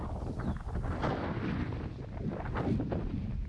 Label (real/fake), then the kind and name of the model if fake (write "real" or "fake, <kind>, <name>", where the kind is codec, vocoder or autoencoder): real